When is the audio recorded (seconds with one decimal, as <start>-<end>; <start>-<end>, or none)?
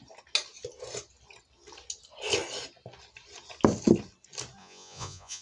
0.0-4.6